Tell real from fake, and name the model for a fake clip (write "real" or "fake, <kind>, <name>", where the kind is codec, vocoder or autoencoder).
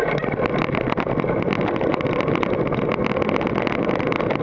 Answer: real